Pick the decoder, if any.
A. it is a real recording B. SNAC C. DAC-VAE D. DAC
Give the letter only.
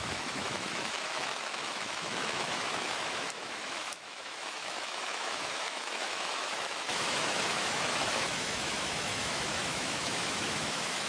C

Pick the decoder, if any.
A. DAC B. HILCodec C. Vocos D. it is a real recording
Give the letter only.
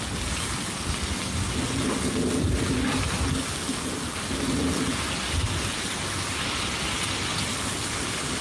D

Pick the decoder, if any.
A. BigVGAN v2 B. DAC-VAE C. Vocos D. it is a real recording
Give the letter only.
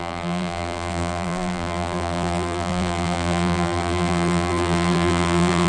A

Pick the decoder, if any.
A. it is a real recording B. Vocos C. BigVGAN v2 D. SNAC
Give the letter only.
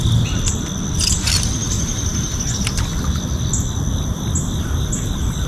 A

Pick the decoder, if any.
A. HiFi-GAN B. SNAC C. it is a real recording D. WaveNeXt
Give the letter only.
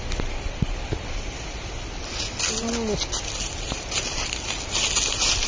C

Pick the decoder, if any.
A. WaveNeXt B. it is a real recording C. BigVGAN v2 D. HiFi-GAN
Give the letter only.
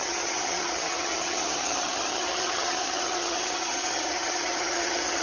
D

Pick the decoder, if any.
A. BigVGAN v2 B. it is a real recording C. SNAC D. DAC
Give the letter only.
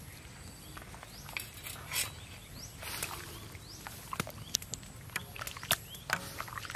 B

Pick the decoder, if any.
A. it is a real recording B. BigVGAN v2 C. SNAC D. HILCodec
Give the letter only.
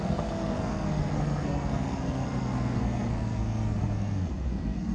C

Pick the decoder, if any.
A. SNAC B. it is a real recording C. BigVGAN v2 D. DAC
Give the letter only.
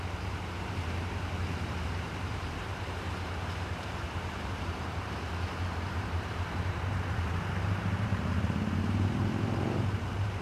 C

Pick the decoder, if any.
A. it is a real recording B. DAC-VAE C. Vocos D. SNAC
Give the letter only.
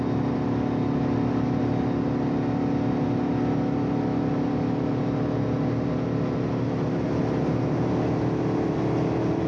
A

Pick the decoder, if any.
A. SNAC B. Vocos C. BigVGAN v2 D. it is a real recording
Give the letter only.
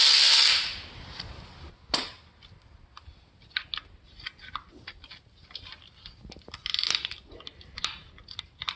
D